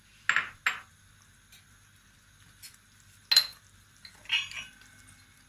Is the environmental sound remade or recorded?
recorded